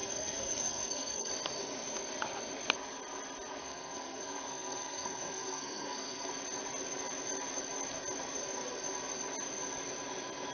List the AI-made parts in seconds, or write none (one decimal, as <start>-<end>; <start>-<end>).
0.0-1.3; 3.6-6.3